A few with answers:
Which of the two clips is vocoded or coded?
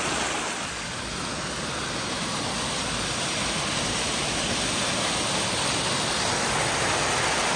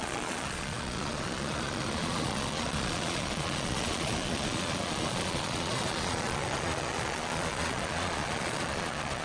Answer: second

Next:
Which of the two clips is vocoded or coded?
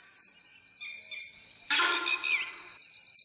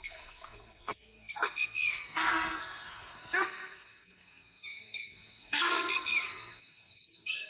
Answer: second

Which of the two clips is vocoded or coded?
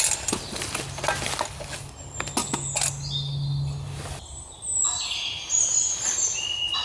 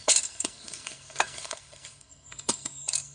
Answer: second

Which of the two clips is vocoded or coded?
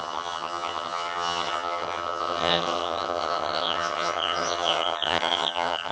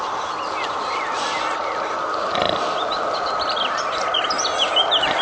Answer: first